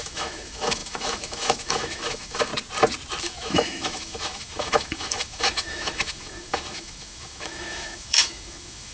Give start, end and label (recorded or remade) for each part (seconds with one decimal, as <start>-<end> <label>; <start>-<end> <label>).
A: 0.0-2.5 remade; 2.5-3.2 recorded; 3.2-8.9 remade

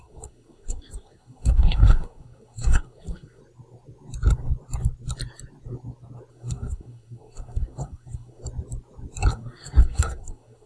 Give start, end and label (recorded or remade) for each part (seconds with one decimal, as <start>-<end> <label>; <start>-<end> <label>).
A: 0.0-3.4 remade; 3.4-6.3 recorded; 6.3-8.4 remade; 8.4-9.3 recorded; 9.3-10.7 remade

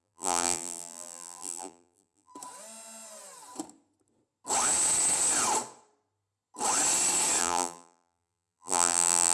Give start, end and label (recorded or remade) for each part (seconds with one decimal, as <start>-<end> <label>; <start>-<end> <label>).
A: 0.0-2.3 remade; 2.3-7.4 recorded; 7.4-9.3 remade

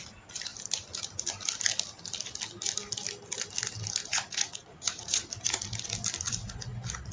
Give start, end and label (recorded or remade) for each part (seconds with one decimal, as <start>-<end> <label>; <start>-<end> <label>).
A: 0.0-4.1 recorded; 4.1-5.2 remade; 5.2-7.1 recorded

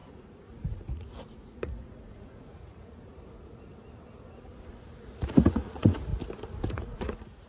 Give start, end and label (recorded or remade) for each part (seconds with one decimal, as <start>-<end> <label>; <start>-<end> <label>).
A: 0.0-3.7 remade; 3.7-4.7 recorded; 4.7-6.1 remade; 6.1-6.7 recorded; 6.7-7.5 remade

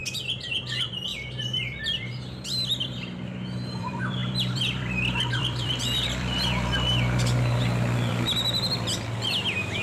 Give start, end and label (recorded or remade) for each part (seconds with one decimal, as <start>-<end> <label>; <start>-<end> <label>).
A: 0.0-9.8 remade

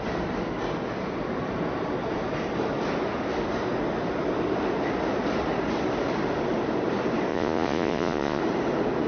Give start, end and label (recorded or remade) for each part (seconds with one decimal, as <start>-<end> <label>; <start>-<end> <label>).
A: 0.0-7.3 recorded; 7.3-8.4 remade; 8.4-9.1 recorded